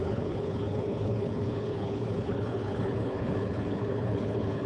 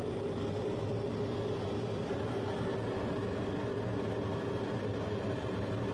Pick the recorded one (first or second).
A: second